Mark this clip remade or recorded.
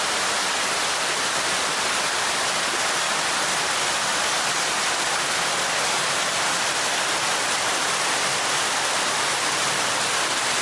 recorded